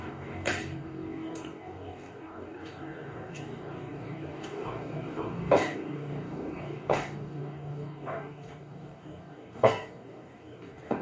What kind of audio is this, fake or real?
fake